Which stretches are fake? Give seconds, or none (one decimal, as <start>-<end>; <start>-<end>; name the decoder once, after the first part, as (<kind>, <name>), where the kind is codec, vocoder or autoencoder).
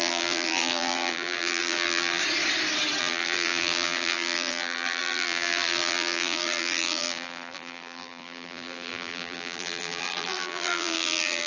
0.0-2.2 (vocoder, BigVGAN v2); 3.0-11.5